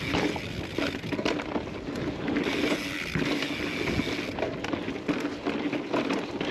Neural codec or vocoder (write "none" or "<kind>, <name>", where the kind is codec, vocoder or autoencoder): none